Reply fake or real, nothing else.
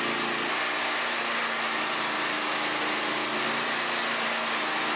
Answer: real